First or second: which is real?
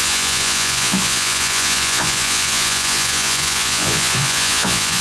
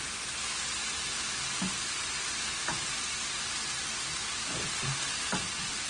second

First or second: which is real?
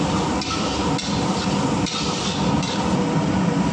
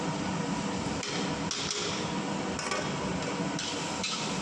second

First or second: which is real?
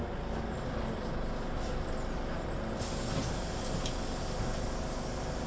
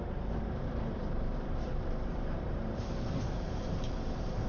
first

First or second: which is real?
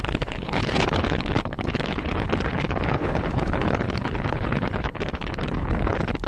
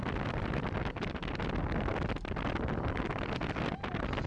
second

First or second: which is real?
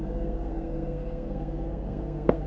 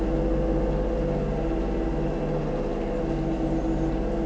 second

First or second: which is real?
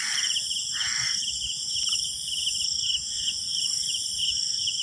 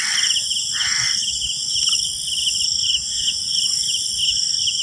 second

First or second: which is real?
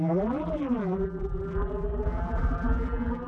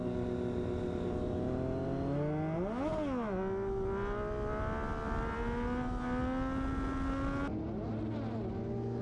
second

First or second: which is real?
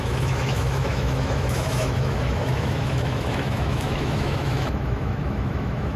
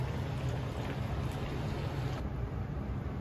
second